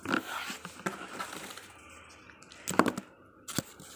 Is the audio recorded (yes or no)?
yes